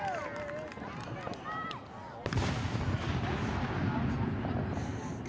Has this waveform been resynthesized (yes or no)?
no